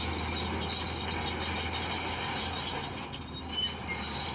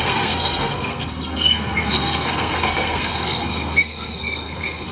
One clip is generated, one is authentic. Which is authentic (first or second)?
first